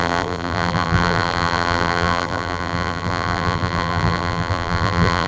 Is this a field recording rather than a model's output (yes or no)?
no